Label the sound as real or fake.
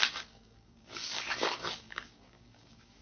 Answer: fake